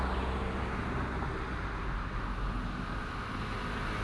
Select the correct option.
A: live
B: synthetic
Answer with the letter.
A